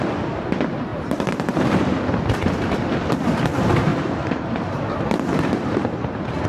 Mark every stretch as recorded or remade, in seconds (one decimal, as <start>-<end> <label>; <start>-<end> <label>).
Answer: 0.0-0.9 recorded; 0.9-2.0 remade; 2.0-3.9 recorded; 3.9-4.8 remade; 4.8-6.5 recorded